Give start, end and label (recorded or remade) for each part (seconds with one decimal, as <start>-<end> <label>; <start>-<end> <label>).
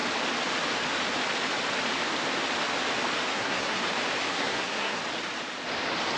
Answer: 0.0-3.3 recorded; 3.3-3.8 remade; 3.8-4.3 recorded; 4.3-5.0 remade; 5.0-6.2 recorded